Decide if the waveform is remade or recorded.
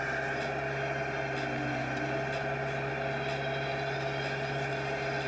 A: recorded